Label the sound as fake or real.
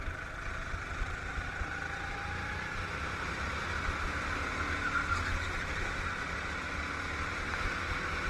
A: real